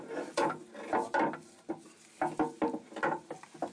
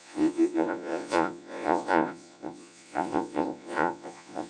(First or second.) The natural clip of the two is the first